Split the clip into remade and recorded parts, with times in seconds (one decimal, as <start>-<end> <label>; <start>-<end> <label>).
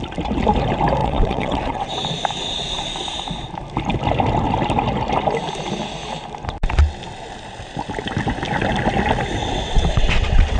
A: 0.0-1.0 recorded; 1.0-1.9 remade; 1.9-9.4 recorded; 9.4-10.6 remade